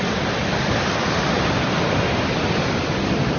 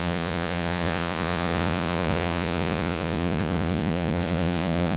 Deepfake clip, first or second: second